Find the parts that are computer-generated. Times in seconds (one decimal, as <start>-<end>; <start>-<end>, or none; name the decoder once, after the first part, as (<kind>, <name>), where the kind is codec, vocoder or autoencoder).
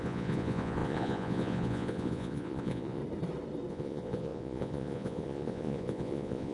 0.0-3.0 (vocoder, Vocos); 3.7-6.5